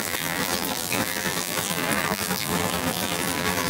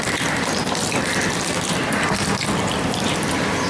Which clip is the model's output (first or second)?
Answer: first